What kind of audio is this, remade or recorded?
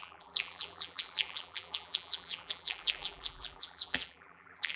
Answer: remade